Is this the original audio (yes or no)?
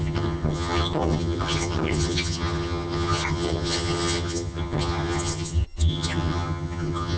no